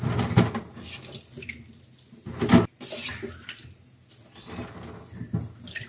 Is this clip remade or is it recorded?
recorded